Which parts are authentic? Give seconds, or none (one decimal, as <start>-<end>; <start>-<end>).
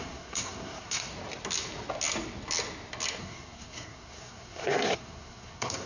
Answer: 1.1-3.2